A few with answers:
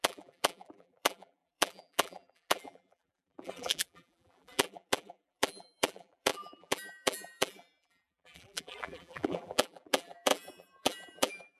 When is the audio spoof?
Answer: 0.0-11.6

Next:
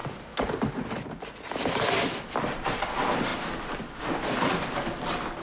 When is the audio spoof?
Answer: none

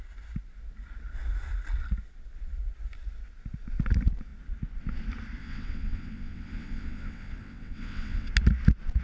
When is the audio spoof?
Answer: 5.4-8.3

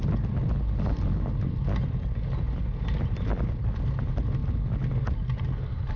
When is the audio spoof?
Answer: none